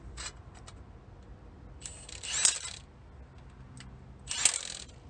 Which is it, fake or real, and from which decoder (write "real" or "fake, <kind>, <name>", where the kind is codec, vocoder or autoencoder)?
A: real